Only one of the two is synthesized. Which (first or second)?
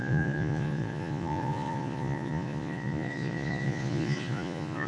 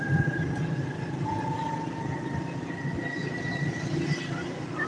first